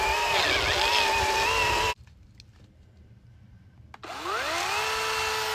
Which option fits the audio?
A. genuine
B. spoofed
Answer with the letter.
A